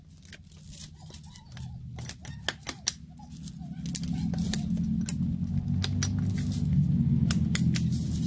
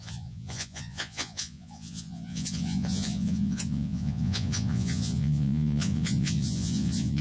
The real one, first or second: first